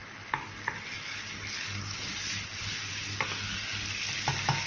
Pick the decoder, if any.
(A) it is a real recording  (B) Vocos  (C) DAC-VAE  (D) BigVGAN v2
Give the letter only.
A